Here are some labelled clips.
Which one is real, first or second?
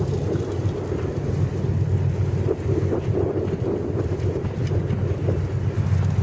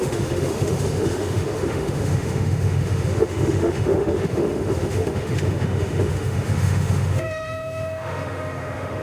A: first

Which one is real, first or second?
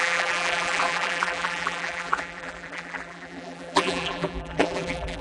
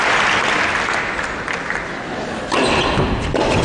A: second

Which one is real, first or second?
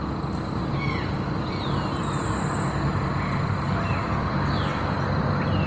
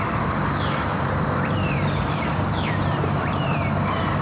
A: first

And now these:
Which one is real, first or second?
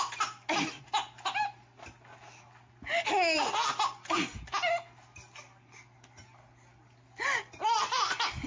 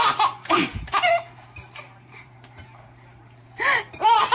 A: first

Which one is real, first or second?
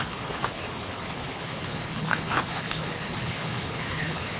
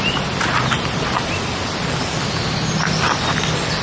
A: second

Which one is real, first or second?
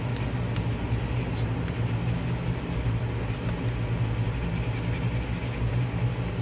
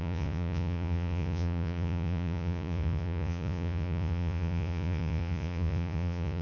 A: first